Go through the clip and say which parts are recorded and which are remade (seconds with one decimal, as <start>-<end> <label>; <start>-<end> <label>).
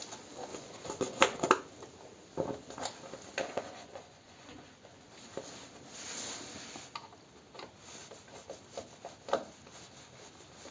0.0-0.5 recorded; 0.5-1.5 remade; 1.5-3.4 recorded; 3.4-5.1 remade; 5.1-10.7 recorded